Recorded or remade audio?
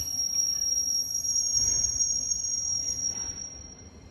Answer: remade